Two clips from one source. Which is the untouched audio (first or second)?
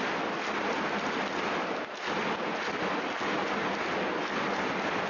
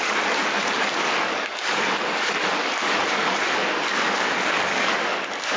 first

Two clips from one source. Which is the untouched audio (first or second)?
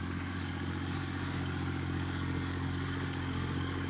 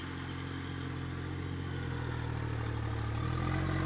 second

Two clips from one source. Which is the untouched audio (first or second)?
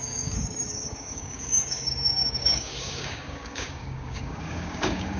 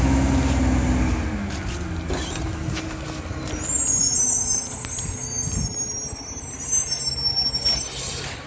second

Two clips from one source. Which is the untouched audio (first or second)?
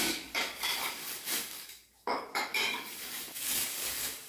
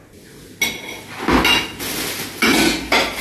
second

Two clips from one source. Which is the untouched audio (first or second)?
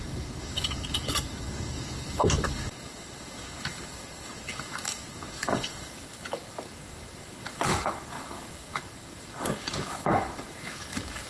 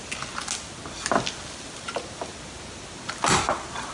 second